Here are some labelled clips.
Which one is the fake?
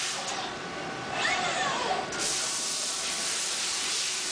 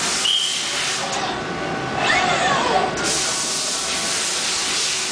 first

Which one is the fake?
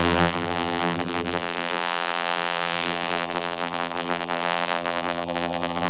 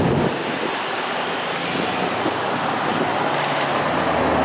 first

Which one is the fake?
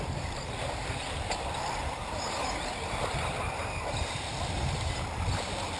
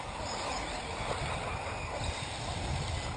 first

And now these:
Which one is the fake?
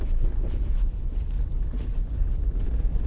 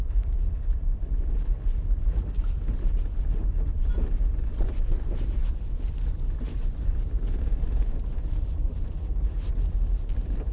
second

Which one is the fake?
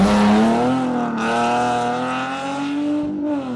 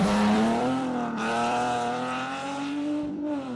second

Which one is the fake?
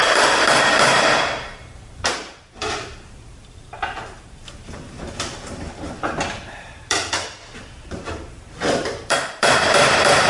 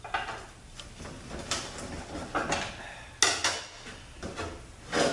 first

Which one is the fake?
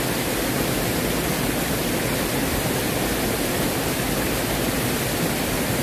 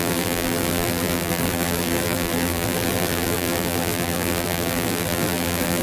second